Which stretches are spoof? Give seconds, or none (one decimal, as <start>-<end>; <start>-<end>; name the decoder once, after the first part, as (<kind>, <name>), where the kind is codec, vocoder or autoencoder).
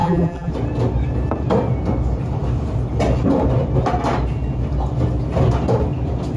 0.0-0.5 (vocoder, BigVGAN v2)